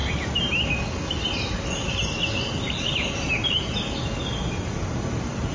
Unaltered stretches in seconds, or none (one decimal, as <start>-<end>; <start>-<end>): 0.0-5.5